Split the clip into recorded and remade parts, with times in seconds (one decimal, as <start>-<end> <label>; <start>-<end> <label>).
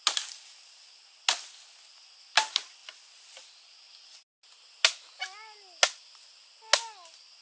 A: 0.0-7.4 recorded